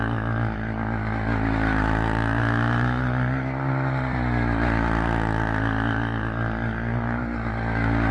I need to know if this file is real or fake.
real